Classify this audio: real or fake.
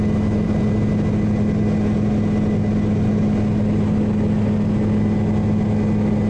real